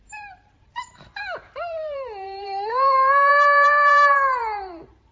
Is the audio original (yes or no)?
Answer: no